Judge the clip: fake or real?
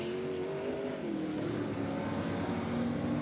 real